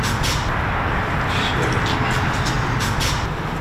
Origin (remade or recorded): recorded